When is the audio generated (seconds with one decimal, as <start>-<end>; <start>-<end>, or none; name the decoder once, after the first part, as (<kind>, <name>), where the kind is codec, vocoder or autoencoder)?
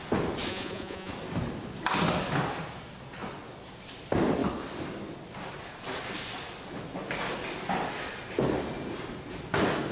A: 0.5-1.1 (vocoder, Vocos)